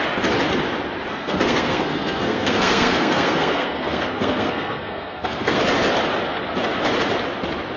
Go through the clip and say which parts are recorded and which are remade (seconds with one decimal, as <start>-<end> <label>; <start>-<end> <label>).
0.0-1.1 recorded; 1.1-5.6 remade; 5.6-7.8 recorded